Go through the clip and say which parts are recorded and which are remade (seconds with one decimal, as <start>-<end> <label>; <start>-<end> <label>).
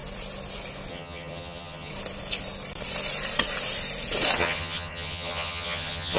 0.0-0.9 recorded; 0.9-1.9 remade; 1.9-4.4 recorded; 4.4-6.2 remade